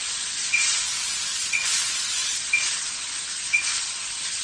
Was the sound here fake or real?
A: fake